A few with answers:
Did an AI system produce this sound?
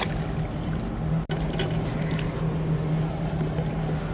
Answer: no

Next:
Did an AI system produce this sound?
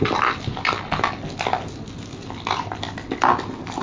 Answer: no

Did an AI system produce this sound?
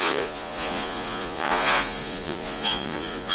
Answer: yes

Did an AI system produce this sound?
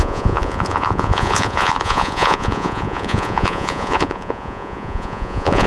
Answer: yes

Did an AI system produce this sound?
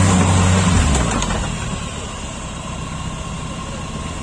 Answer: no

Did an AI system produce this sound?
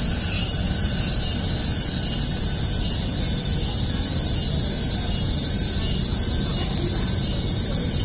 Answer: no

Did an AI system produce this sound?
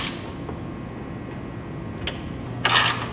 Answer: no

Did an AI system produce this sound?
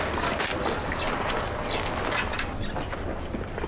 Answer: no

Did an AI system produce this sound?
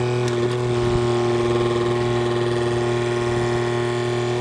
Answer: no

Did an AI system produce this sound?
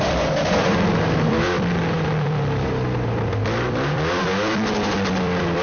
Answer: yes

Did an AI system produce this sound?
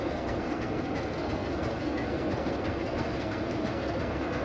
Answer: yes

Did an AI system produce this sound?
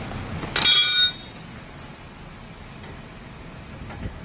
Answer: no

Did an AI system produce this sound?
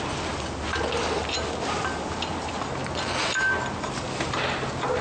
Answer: no